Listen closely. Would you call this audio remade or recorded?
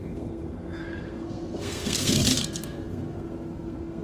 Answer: remade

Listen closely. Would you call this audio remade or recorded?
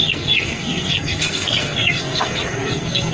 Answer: remade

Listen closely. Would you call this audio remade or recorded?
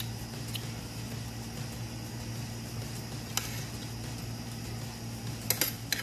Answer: recorded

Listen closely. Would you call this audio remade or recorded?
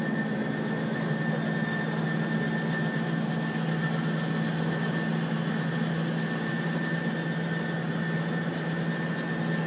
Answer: recorded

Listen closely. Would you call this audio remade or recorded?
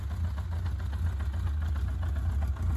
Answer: recorded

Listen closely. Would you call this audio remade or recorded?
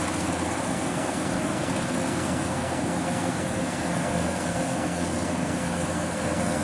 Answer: remade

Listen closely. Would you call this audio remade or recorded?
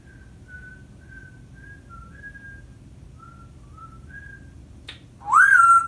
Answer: recorded